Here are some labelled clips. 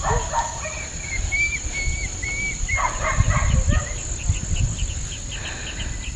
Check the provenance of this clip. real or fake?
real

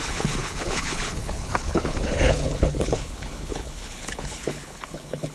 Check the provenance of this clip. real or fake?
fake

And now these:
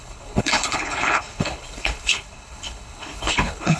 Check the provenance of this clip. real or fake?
fake